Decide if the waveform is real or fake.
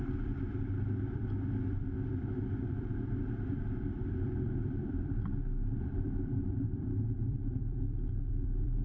fake